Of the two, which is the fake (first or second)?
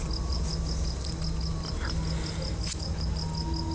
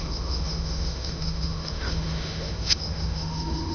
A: second